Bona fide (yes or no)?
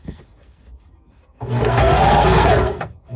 no